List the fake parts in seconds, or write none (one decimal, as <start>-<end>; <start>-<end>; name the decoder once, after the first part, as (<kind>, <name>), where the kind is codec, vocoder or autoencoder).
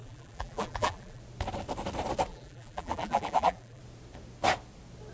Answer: 0.0-1.2 (vocoder, BigVGAN v2); 2.3-3.8